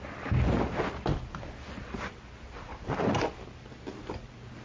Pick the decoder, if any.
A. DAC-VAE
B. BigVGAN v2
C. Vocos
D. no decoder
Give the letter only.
D